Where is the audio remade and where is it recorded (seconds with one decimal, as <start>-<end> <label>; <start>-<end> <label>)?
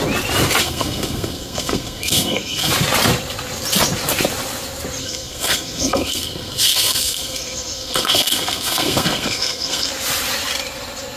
0.0-0.6 recorded; 0.6-2.7 remade; 2.7-5.0 recorded; 5.0-9.9 remade; 9.9-11.2 recorded